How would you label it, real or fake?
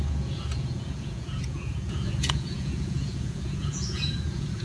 fake